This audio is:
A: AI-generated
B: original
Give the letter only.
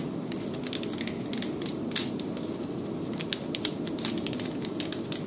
B